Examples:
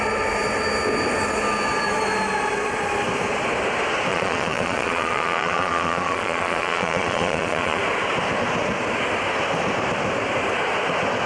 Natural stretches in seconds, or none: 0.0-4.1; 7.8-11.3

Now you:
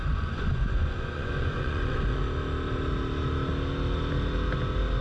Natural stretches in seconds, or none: 2.2-5.0